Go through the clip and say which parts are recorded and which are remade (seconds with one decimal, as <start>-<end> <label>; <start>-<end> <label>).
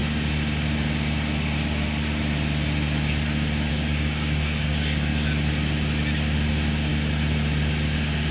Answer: 0.0-3.7 recorded; 3.7-5.1 remade; 5.1-6.5 recorded; 6.5-6.9 remade; 6.9-8.3 recorded